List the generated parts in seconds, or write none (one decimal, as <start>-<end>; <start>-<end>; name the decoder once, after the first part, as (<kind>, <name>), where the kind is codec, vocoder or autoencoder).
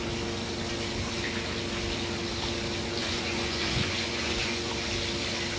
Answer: 3.0-4.7 (vocoder, Vocos)